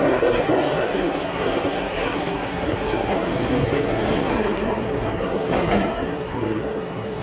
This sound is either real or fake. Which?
fake